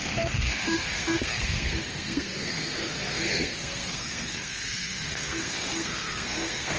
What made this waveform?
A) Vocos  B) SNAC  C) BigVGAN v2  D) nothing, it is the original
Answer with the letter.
B